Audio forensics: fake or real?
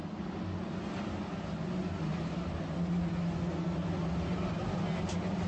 real